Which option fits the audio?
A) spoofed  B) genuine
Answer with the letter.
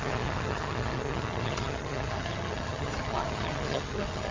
A